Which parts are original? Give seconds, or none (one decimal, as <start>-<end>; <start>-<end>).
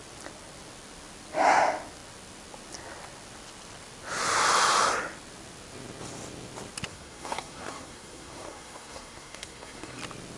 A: 0.0-6.9; 10.0-10.4